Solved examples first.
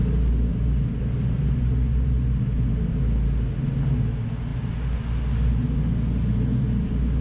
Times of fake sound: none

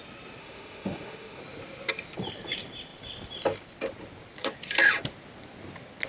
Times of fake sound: 0.4-1.4 (autoencoder, DAC-VAE)

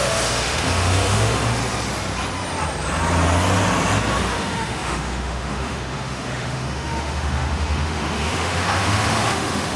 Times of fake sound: 0.0-1.6 (autoencoder, DAC-VAE); 4.2-9.8